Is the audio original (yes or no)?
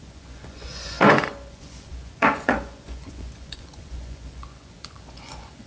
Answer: no